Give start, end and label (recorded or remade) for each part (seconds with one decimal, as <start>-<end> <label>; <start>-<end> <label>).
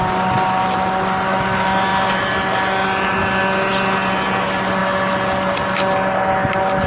0.0-6.9 recorded